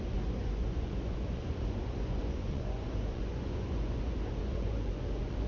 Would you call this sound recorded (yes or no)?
no